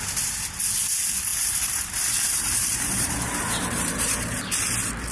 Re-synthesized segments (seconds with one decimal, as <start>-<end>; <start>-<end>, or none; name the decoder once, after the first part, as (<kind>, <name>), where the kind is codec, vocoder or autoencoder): 1.3-4.4 (vocoder, BigVGAN v2)